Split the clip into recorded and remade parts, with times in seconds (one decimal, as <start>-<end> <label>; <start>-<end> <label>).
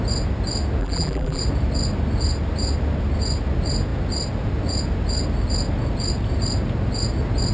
0.0-0.8 recorded; 0.8-1.4 remade; 1.4-7.5 recorded